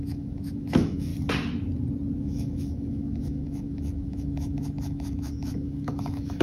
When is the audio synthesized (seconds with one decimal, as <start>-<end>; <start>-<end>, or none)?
0.0-1.1; 2.2-6.4